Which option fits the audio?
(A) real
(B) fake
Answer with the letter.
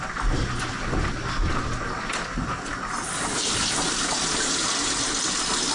A